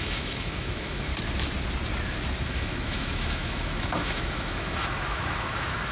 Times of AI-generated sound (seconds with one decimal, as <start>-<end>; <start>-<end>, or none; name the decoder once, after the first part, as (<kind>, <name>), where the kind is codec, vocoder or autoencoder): 0.0-1.1 (autoencoder, DAC-VAE); 2.5-5.9